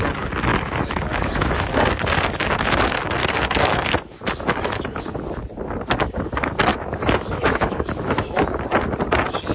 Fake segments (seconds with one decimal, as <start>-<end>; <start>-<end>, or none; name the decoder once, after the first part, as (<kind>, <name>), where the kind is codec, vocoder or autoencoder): 0.5-1.7 (autoencoder, DAC-VAE); 3.2-5.0; 6.7-8.4